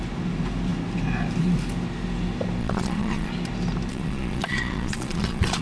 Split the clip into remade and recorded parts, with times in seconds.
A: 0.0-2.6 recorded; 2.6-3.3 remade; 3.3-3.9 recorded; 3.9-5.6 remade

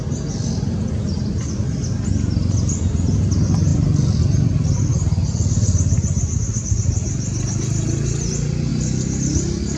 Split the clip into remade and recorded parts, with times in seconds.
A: 0.0-9.8 recorded

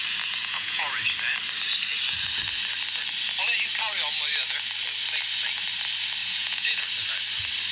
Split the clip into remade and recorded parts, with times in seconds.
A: 0.0-0.4 recorded; 0.4-1.0 remade; 1.0-6.2 recorded; 6.2-6.8 remade; 6.8-7.7 recorded

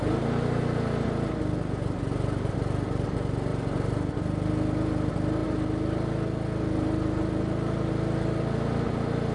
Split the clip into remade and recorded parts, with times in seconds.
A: 0.0-3.5 recorded; 3.5-4.2 remade; 4.2-9.3 recorded

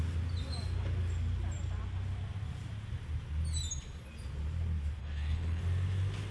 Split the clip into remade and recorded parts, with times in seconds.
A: 0.0-5.0 recorded; 5.0-5.6 remade; 5.6-6.3 recorded

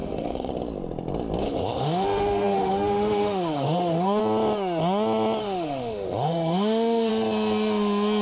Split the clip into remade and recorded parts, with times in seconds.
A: 0.0-0.5 remade; 0.5-1.4 recorded; 1.4-4.2 remade; 4.2-5.4 recorded; 5.4-7.1 remade; 7.1-8.2 recorded